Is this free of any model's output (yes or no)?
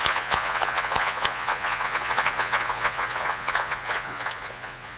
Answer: no